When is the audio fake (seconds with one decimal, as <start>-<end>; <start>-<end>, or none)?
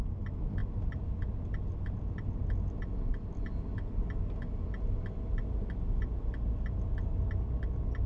none